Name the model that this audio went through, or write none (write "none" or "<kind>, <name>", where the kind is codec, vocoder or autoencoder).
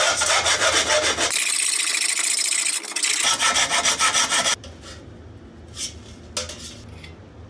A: none